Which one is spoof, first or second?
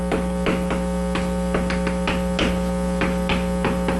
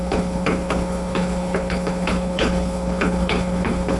second